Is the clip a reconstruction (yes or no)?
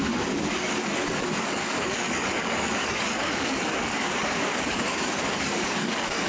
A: yes